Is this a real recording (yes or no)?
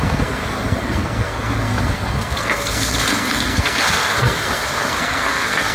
no